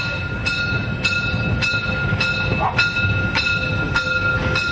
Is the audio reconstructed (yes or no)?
no